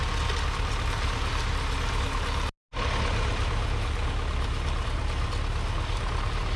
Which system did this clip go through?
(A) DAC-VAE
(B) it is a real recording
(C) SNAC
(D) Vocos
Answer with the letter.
B